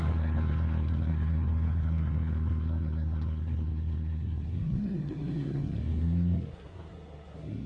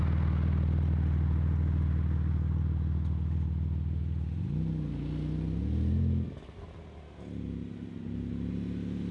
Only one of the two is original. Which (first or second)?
second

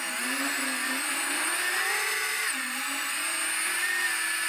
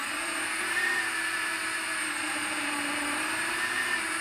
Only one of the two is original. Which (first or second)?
first